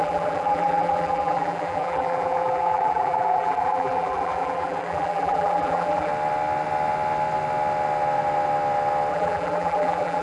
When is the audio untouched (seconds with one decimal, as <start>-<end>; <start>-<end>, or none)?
6.1-9.1